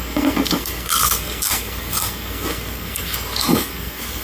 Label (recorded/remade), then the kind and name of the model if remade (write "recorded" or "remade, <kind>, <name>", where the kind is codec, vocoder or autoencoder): remade, codec, SNAC